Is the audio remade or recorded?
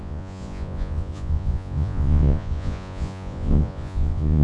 remade